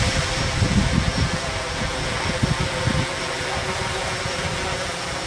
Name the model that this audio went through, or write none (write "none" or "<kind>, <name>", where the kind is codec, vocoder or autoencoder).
none